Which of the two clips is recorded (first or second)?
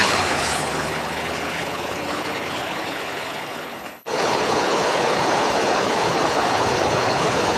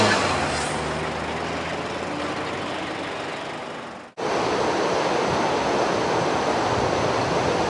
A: second